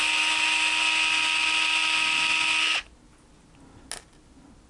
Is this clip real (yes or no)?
yes